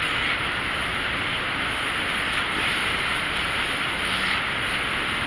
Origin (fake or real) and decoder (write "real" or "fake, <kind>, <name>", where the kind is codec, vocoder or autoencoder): real